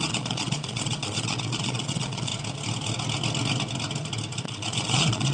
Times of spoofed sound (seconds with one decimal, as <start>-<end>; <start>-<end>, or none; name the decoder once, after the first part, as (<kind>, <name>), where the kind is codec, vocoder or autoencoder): 0.0-2.3 (vocoder, Vocos); 4.4-5.3